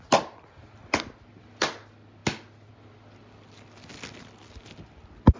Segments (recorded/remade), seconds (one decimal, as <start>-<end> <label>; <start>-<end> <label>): 0.0-5.4 recorded